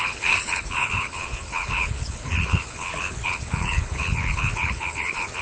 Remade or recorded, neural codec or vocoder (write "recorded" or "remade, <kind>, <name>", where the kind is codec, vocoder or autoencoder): remade, codec, HILCodec